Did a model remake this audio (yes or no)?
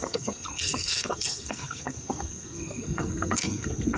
yes